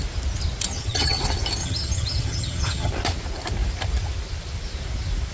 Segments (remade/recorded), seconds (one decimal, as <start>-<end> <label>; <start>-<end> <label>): 0.0-0.7 recorded; 0.7-1.2 remade; 1.2-1.6 recorded; 1.6-2.9 remade; 2.9-5.3 recorded

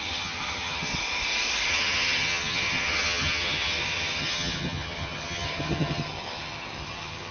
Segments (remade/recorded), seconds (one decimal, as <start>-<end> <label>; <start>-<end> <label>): 0.0-0.9 remade; 0.9-1.7 recorded; 1.7-7.3 remade